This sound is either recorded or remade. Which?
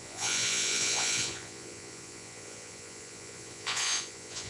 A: remade